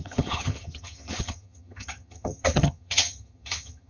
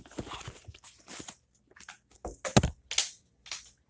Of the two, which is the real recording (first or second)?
second